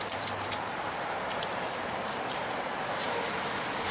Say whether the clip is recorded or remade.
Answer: remade